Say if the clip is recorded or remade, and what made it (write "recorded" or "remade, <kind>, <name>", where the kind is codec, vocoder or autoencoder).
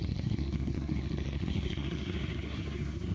remade, codec, SNAC